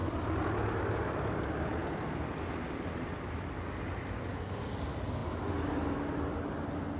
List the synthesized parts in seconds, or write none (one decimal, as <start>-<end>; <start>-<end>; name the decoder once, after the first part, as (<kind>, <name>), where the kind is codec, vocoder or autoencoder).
none